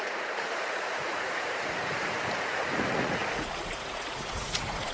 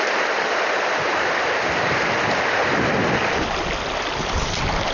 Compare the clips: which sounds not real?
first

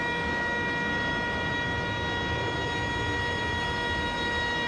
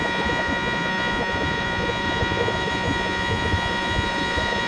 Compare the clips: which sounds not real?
second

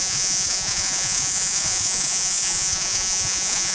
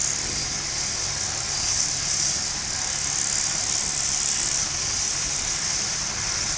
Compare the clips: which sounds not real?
first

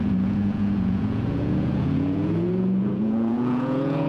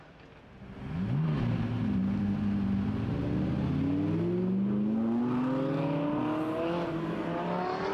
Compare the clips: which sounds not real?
first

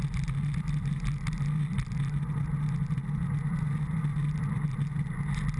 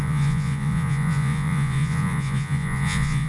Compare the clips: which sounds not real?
second